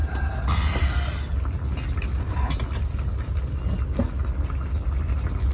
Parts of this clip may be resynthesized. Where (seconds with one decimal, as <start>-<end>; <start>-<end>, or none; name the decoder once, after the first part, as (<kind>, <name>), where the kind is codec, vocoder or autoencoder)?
none